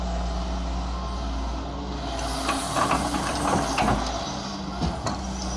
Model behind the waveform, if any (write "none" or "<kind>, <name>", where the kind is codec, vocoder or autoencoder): none